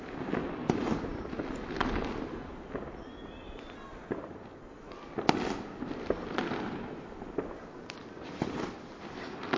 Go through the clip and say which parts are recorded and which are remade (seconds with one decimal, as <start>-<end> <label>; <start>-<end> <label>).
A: 0.0-9.6 recorded